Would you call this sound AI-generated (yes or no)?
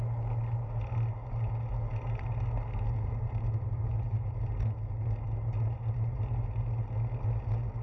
no